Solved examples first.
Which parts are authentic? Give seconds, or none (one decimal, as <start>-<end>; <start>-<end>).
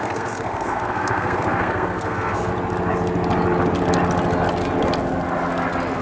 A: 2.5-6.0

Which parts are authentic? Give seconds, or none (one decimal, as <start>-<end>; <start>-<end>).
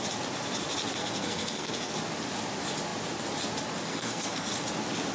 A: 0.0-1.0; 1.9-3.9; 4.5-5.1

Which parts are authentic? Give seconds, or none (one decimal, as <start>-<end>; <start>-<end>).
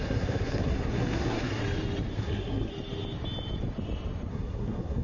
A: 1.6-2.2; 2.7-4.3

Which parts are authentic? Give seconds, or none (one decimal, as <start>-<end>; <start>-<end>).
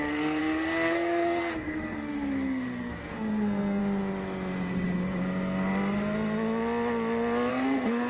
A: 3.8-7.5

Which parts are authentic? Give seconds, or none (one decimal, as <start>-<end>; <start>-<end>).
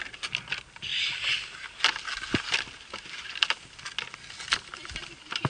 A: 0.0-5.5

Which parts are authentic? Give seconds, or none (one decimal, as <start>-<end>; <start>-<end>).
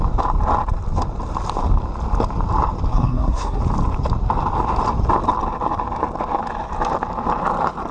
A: 0.0-2.9; 3.6-7.9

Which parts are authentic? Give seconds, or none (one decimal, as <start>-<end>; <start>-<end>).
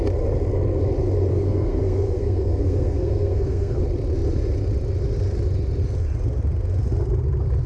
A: 0.0-1.3; 3.8-7.7